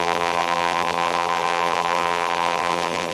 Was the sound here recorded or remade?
remade